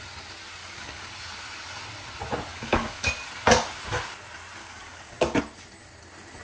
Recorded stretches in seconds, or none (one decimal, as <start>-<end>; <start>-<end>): 0.0-0.6; 1.1-2.5; 3.1-4.6; 5.4-6.4